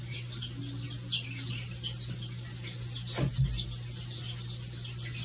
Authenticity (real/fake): real